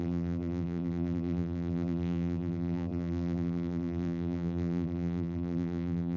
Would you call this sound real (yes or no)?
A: no